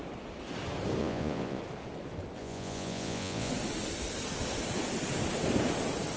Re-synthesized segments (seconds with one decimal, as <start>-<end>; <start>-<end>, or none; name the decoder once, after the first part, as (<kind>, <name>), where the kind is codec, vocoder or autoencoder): 1.0-1.6 (vocoder, Vocos); 2.4-3.5